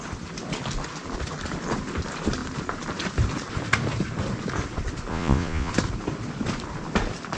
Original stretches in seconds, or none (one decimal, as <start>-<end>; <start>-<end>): 0.0-5.1; 5.7-7.4